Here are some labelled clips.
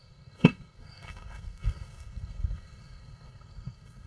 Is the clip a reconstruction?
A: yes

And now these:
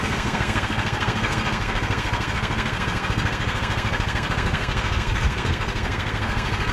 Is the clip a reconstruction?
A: yes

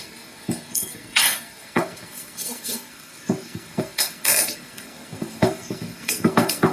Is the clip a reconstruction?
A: yes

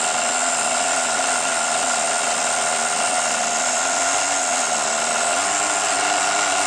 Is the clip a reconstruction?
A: no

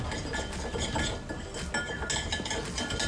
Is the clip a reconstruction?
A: no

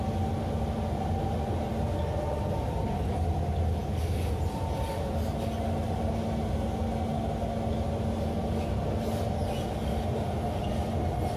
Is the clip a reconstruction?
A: no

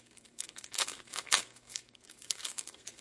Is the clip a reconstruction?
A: yes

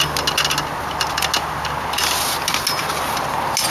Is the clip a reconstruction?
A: no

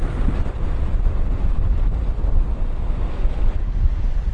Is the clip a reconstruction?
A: no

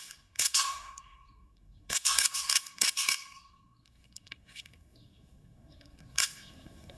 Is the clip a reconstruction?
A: yes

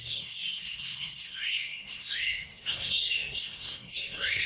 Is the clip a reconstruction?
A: yes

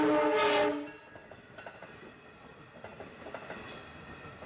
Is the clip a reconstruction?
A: no